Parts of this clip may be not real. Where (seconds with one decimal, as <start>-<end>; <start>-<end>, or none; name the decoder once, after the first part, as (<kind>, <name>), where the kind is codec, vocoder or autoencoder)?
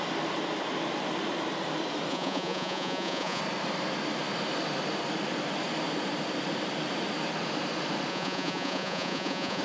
2.1-3.4 (vocoder, Vocos); 8.1-9.6